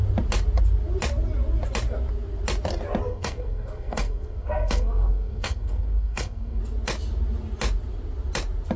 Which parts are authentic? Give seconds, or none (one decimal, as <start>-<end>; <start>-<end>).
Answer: 0.0-3.1; 6.6-8.8